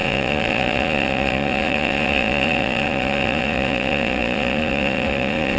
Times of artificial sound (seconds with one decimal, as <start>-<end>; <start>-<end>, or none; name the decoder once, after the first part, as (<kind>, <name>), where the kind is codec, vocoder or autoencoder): 0.0-5.6 (vocoder, Vocos)